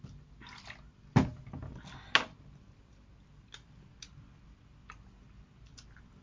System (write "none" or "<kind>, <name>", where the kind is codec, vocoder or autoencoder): none